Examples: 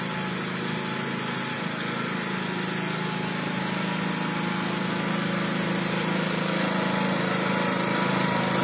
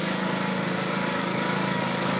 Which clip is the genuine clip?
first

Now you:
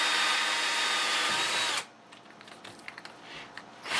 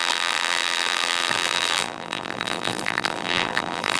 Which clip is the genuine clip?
first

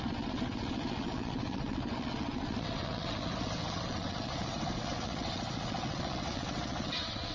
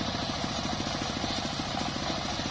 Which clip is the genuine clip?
second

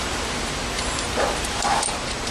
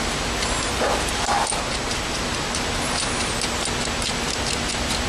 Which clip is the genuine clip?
second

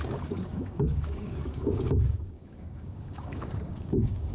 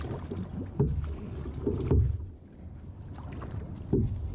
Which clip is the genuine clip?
second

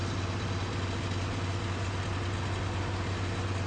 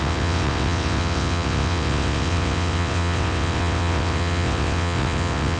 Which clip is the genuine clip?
first